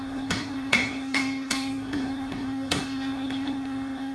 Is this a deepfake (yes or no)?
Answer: yes